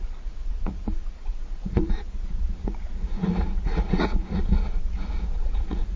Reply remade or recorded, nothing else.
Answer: remade